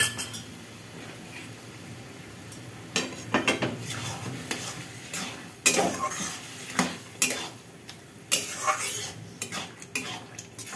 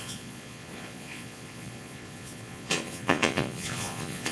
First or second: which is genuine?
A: first